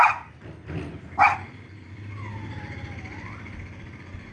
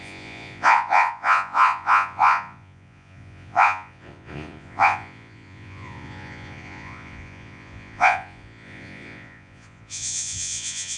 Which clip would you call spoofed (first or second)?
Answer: second